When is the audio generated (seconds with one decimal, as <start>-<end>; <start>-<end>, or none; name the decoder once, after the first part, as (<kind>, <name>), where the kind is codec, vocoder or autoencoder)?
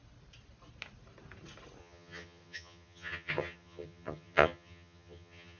1.8-5.6 (vocoder, HiFi-GAN)